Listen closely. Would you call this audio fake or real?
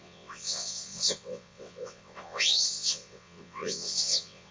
fake